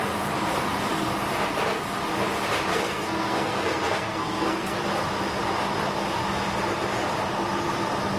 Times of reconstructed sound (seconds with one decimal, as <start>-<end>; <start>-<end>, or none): 2.7-4.8